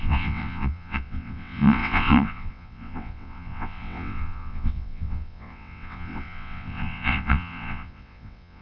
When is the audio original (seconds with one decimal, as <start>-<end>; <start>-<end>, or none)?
none